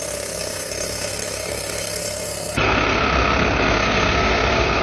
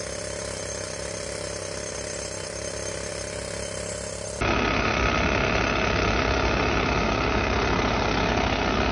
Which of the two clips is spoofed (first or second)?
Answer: first